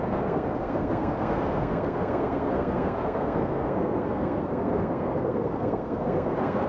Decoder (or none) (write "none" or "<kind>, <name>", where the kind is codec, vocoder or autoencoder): codec, SNAC